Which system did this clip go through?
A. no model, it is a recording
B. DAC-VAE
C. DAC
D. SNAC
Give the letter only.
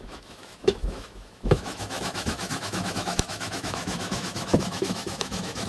B